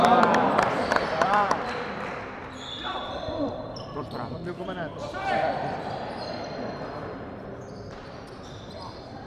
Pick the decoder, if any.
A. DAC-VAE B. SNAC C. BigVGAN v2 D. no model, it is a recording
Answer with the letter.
C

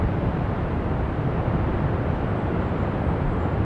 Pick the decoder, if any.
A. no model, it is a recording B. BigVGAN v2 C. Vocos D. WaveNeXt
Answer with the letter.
B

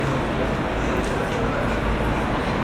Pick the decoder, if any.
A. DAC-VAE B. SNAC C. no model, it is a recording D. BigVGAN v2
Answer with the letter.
C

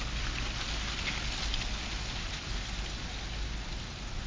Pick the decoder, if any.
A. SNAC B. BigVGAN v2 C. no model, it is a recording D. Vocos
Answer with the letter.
C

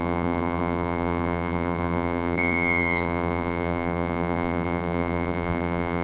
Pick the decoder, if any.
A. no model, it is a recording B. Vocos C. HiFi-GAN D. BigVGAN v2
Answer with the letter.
D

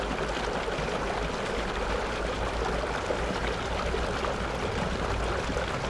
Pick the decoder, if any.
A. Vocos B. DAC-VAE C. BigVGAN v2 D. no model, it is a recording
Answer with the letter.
D